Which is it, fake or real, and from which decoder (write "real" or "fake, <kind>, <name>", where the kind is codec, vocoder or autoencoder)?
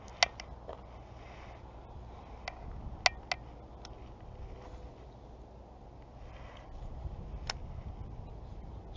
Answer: real